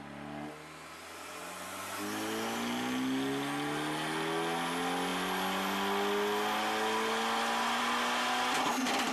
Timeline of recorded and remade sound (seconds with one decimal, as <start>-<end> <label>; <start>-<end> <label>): 0.0-9.1 recorded